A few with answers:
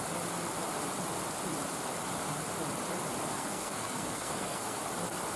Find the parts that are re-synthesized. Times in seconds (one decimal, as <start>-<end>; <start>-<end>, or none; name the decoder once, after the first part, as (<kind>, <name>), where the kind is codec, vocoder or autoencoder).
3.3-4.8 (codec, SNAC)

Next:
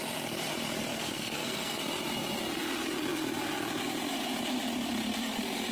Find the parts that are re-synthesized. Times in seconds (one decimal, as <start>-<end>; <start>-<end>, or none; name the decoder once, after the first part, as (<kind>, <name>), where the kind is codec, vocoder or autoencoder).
0.9-1.8 (codec, SNAC)

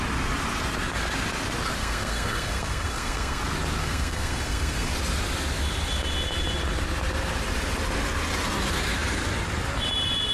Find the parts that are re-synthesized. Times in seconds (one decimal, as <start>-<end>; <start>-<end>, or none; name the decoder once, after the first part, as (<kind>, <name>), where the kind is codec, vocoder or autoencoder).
1.8-3.4 (codec, SNAC); 3.8-4.9

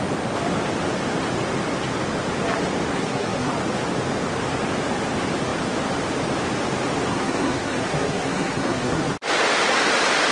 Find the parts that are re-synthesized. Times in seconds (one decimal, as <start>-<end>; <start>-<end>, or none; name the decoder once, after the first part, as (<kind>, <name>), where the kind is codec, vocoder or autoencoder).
2.9-3.5 (codec, SNAC); 7.1-9.1